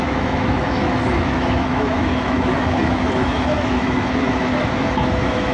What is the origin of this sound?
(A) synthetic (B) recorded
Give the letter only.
A